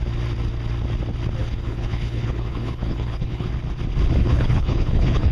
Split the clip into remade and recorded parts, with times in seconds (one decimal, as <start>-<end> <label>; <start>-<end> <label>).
0.0-1.4 recorded; 1.4-3.5 remade; 3.5-4.2 recorded; 4.2-5.3 remade